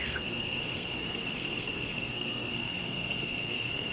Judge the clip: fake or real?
fake